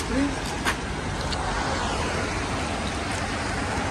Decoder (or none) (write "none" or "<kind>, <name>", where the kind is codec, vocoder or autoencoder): none